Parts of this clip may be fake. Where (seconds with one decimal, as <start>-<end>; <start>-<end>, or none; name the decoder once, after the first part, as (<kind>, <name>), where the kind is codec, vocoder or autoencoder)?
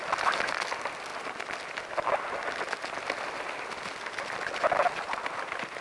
none